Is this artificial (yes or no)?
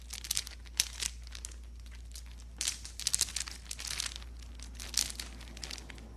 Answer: no